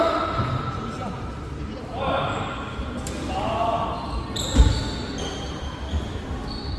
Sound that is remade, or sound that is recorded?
recorded